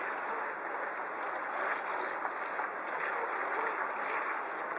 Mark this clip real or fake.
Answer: real